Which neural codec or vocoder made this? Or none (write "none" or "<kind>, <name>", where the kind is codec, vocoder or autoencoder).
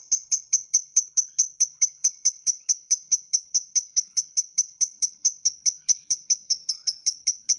codec, HILCodec